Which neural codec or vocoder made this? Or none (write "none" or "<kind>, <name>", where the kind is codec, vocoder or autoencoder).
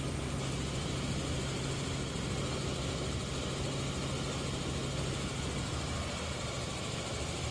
none